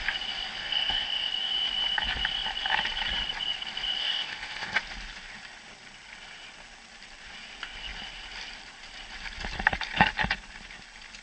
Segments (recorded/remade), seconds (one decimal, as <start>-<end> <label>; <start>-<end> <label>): 0.0-0.6 recorded; 0.6-1.3 remade; 1.3-4.0 recorded; 4.0-4.8 remade; 4.8-11.2 recorded